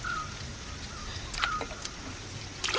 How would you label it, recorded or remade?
recorded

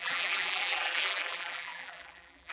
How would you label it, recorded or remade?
remade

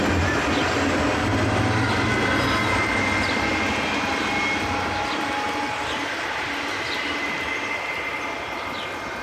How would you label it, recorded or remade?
recorded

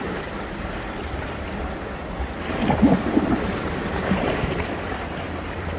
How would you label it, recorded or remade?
remade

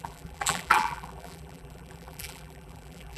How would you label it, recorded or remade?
remade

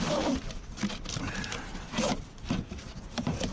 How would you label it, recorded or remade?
remade